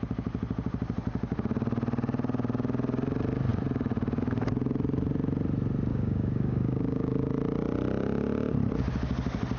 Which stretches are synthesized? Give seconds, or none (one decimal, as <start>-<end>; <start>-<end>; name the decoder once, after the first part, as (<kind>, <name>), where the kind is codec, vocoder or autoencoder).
5.9-7.3 (codec, DAC)